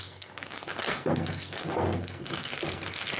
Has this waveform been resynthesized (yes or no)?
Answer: yes